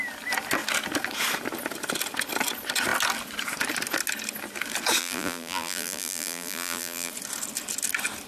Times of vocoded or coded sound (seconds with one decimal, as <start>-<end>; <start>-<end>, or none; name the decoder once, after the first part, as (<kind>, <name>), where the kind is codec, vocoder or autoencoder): 5.0-7.1 (vocoder, BigVGAN v2)